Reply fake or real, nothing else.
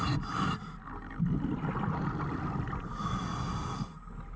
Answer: real